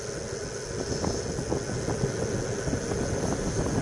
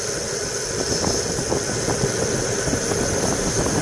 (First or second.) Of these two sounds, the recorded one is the first